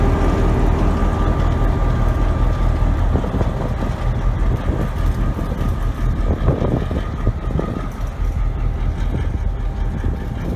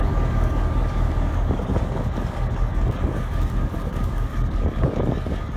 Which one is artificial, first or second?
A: second